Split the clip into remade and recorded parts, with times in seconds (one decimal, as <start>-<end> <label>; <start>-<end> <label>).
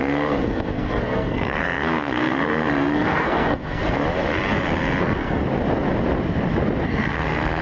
0.0-4.0 remade; 4.0-5.0 recorded; 5.0-5.4 remade; 5.4-6.8 recorded; 6.8-7.6 remade